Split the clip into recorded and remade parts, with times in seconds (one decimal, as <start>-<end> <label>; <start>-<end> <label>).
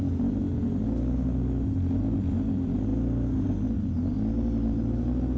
0.0-5.4 recorded